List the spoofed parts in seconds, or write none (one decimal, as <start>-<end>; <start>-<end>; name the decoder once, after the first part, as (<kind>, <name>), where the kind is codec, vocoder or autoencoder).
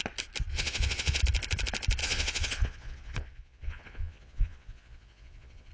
0.5-1.2 (vocoder, Vocos); 2.0-5.7